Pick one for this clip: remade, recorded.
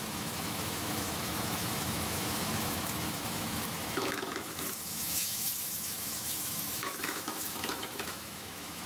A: remade